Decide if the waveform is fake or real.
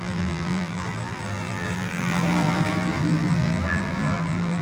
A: fake